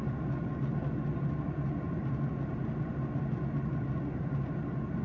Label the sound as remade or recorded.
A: recorded